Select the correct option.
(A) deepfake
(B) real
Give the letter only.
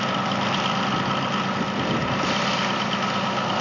B